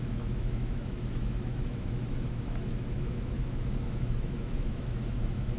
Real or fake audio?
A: fake